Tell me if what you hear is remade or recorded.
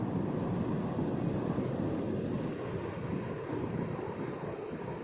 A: recorded